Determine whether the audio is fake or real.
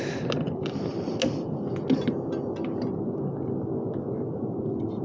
real